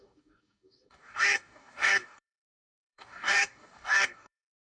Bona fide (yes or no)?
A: no